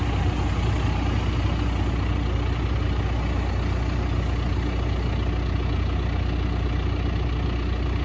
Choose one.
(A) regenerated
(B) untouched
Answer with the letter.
B